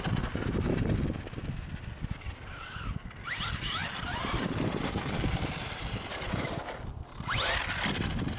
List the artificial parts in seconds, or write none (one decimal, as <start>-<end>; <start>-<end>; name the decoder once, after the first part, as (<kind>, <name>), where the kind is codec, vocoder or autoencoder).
3.8-6.6 (vocoder, BigVGAN v2)